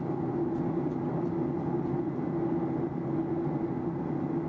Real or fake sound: real